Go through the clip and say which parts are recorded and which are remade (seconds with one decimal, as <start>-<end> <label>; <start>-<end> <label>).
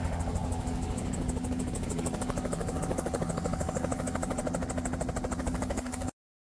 0.0-4.4 remade; 4.4-5.4 recorded; 5.4-6.4 remade